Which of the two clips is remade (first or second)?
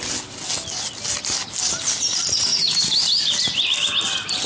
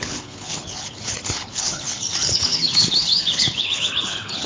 second